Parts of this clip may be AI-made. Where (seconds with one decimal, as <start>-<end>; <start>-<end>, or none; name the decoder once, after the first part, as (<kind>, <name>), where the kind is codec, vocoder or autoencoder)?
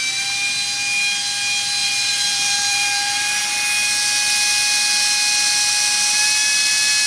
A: 1.8-3.4 (vocoder, BigVGAN v2)